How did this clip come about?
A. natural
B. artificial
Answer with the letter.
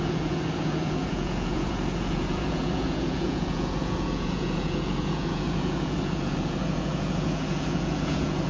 B